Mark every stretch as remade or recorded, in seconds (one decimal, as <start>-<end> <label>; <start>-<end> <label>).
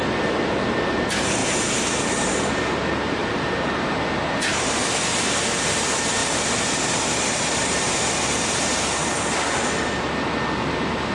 0.0-1.4 recorded; 1.4-2.5 remade; 2.5-3.2 recorded; 3.2-3.9 remade; 3.9-6.2 recorded; 6.2-8.1 remade; 8.1-11.1 recorded